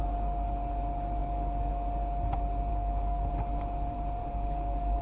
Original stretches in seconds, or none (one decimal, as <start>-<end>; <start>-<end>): 0.0-1.2; 1.7-2.7; 3.3-4.2